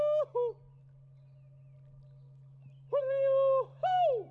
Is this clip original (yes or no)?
yes